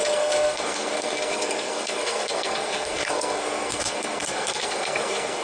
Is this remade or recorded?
remade